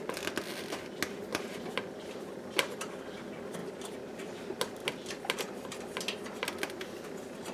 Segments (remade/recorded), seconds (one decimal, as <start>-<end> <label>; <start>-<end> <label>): 0.0-1.3 recorded; 1.3-3.0 remade; 3.0-7.5 recorded